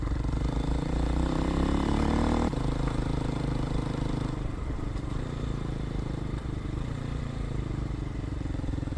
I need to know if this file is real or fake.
fake